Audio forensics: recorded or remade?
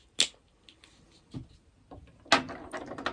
recorded